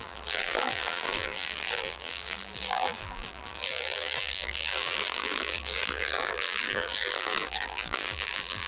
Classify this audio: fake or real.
fake